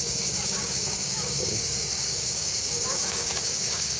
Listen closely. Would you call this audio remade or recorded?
remade